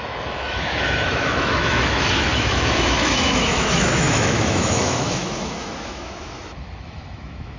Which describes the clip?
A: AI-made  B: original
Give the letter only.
A